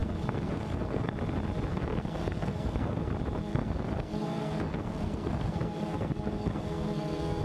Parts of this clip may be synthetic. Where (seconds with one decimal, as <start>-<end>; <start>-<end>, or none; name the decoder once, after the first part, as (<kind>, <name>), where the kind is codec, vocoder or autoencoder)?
0.0-1.1 (codec, SNAC); 1.7-3.1; 3.5-7.4